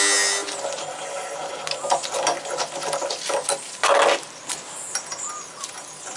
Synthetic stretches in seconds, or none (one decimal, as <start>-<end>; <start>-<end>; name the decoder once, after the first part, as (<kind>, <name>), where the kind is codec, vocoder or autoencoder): none

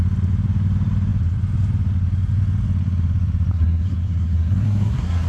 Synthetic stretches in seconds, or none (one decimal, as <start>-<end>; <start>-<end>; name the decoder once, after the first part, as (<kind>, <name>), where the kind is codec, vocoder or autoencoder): 3.5-5.3 (codec, SNAC)